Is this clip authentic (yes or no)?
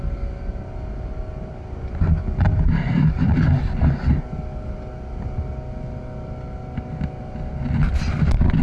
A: yes